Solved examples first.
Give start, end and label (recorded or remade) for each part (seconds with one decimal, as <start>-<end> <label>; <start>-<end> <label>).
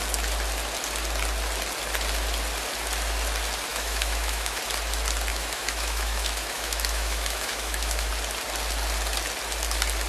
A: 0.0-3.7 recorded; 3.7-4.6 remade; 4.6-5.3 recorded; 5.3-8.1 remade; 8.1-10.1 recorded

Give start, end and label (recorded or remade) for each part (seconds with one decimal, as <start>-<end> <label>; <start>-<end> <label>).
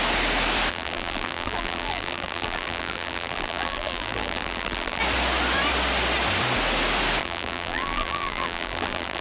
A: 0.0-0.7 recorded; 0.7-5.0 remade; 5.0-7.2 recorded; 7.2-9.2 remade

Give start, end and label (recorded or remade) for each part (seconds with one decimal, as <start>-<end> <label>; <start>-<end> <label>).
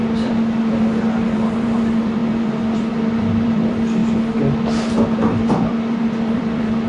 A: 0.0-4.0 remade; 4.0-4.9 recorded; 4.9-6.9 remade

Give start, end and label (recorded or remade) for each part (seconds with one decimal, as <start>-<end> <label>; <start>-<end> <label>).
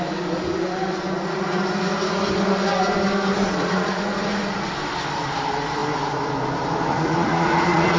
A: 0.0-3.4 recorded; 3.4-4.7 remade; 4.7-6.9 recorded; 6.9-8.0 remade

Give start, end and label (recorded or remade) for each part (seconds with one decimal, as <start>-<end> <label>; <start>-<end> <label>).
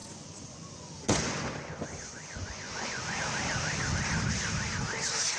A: 0.0-3.2 remade; 3.2-5.4 recorded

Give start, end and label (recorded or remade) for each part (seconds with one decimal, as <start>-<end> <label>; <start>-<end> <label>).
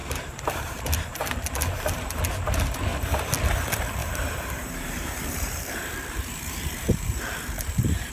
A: 0.0-2.2 remade; 2.2-4.0 recorded; 4.0-8.1 remade